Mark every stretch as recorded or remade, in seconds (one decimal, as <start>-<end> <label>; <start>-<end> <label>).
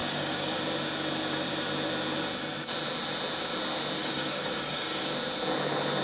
0.0-0.6 remade; 0.6-4.0 recorded; 4.0-5.0 remade; 5.0-6.0 recorded